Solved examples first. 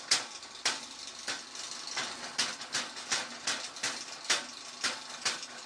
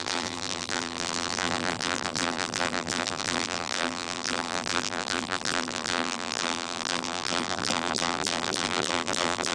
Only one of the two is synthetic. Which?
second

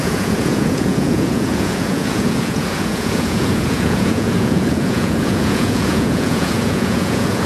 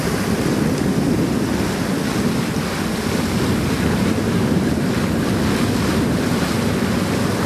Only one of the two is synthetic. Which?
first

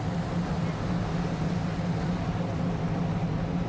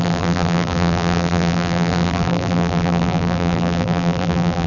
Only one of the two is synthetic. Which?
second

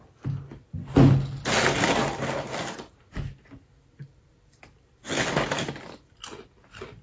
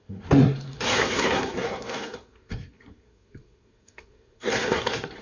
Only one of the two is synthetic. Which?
second